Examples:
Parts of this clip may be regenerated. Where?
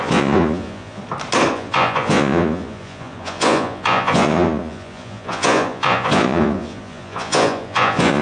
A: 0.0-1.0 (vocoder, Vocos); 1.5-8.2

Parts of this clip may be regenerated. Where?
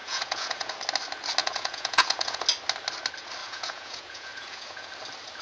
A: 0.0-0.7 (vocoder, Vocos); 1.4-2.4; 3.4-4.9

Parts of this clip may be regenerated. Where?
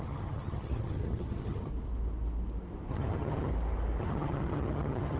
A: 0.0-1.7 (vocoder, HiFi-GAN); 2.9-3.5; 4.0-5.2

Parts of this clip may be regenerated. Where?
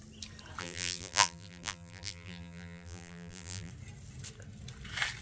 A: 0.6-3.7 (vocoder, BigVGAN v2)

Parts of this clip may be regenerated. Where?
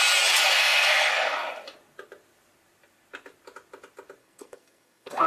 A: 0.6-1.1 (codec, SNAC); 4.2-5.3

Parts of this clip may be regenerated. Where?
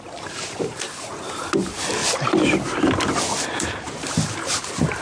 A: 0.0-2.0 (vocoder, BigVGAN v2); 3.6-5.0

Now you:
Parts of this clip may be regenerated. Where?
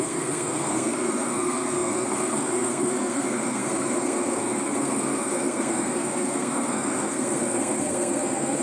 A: 0.0-8.6 (codec, SNAC)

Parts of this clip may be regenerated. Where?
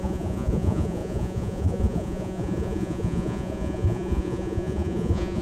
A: 0.0-5.4 (vocoder, Vocos)